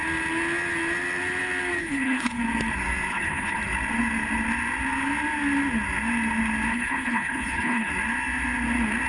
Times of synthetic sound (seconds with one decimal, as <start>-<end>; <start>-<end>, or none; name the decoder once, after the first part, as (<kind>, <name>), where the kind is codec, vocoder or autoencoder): 1.8-2.4 (codec, HILCodec); 3.1-3.6; 6.7-7.9